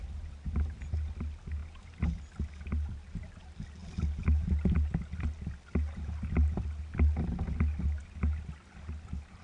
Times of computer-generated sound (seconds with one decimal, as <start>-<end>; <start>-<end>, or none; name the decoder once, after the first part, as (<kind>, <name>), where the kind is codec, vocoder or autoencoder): 1.6-2.2 (vocoder, BigVGAN v2)